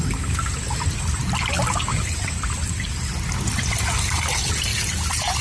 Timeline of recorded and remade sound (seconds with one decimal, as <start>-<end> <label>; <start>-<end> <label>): 0.0-5.4 recorded